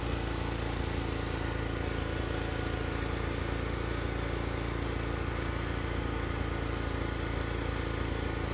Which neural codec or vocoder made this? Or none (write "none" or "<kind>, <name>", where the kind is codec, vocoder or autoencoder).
none